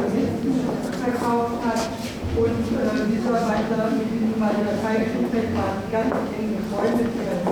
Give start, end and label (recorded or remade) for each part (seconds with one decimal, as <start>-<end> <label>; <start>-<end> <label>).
0.0-3.4 recorded; 3.4-6.6 remade; 6.6-7.5 recorded

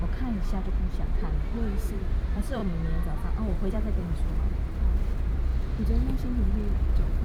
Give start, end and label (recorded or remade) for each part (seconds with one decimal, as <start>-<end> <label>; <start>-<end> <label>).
0.0-1.9 recorded; 1.9-2.6 remade; 2.6-3.7 recorded; 3.7-5.5 remade; 5.5-6.7 recorded; 6.7-7.2 remade

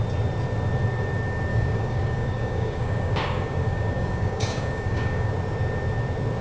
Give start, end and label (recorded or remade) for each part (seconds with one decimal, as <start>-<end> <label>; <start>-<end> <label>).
0.0-1.5 recorded; 1.5-5.3 remade; 5.3-6.4 recorded

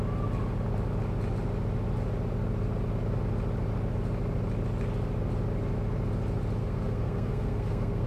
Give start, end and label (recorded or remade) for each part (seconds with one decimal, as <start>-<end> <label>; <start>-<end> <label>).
0.0-6.6 recorded; 6.6-8.1 remade

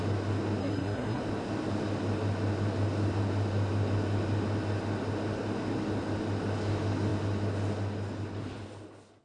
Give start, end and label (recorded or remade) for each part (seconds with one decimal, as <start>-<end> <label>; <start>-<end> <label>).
0.0-0.6 recorded; 0.6-1.2 remade; 1.2-9.2 recorded